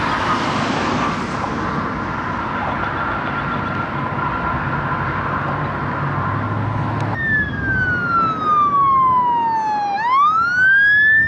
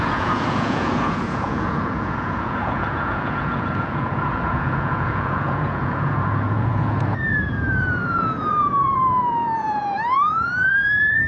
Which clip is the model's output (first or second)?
second